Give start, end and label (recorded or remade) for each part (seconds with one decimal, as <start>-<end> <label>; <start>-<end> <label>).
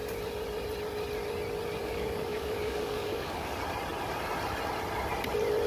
0.0-1.8 recorded; 1.8-3.5 remade; 3.5-5.7 recorded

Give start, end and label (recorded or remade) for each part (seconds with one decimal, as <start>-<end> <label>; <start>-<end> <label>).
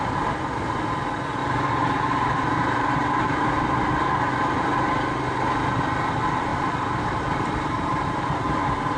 0.0-1.4 recorded; 1.4-3.9 remade; 3.9-6.5 recorded; 6.5-7.2 remade; 7.2-9.0 recorded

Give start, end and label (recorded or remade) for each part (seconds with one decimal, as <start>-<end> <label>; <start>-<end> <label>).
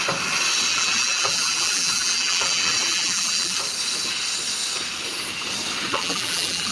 0.0-0.7 recorded; 0.7-3.6 remade; 3.6-5.9 recorded; 5.9-6.7 remade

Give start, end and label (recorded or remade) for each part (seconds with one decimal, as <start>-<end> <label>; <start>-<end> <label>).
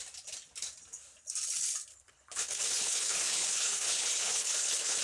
0.0-1.9 recorded; 1.9-5.0 remade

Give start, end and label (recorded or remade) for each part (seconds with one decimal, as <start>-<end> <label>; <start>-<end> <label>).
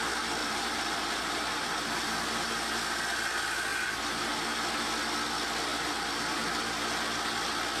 0.0-0.4 recorded; 0.4-2.5 remade; 2.5-3.7 recorded; 3.7-4.3 remade; 4.3-5.7 recorded; 5.7-6.4 remade; 6.4-7.8 recorded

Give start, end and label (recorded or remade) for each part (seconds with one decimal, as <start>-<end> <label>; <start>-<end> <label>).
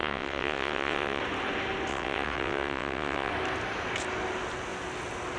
0.0-1.2 remade; 1.2-1.9 recorded; 1.9-3.3 remade; 3.3-5.4 recorded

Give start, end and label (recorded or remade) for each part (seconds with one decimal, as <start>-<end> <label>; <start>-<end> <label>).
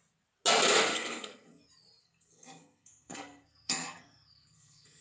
0.0-0.9 recorded; 0.9-1.6 remade; 1.6-2.0 recorded; 2.0-5.0 remade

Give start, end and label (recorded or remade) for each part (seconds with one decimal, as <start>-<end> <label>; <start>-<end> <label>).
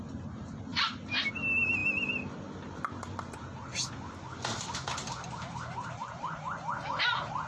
0.0-0.7 recorded; 0.7-1.3 remade; 1.3-5.8 recorded; 5.8-6.7 remade; 6.7-7.5 recorded